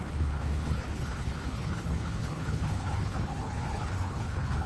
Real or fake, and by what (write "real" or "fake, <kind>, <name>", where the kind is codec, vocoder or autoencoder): fake, codec, HILCodec